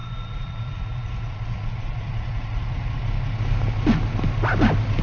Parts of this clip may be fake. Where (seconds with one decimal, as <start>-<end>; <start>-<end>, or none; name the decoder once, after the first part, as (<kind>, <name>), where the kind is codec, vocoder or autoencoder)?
0.0-3.0 (vocoder, Vocos)